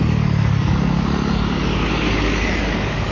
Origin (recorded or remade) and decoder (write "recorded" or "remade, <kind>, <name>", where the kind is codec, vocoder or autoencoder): remade, codec, DAC